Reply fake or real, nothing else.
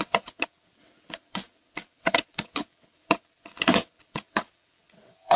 fake